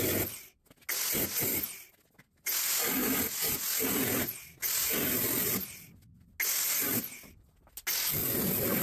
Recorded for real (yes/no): yes